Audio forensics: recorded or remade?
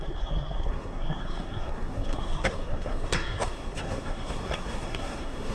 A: remade